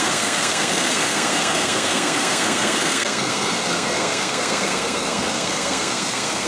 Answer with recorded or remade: remade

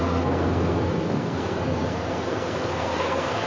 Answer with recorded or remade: remade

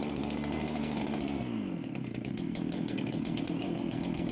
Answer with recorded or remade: remade